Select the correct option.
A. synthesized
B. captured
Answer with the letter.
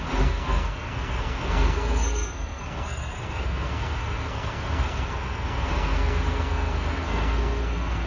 A